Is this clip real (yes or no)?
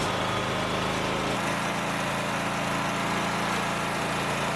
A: yes